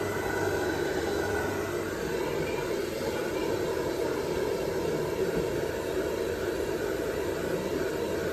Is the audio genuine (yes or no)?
yes